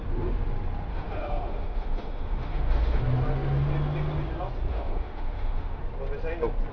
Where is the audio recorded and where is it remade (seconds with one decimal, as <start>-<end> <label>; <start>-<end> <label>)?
0.0-0.9 recorded; 0.9-3.0 remade; 3.0-4.7 recorded; 4.7-5.8 remade; 5.8-6.7 recorded